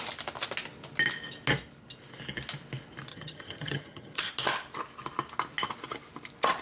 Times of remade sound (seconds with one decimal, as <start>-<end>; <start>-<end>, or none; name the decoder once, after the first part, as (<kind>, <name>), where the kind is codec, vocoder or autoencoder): 3.1-4.3 (vocoder, HiFi-GAN)